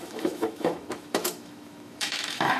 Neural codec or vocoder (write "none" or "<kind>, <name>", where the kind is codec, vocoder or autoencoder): autoencoder, DAC-VAE